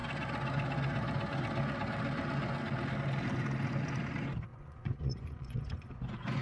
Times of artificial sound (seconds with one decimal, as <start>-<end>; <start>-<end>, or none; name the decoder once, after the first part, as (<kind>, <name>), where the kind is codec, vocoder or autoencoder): 4.5-6.4 (vocoder, Vocos)